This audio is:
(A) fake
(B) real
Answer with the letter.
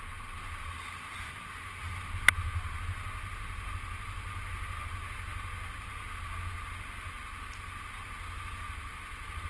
B